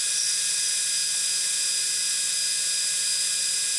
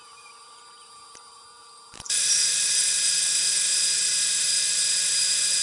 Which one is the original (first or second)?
first